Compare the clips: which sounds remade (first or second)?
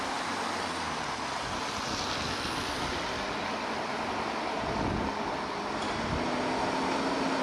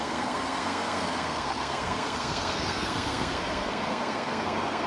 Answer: second